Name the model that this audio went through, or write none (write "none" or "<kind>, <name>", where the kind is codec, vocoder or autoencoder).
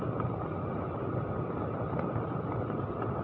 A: none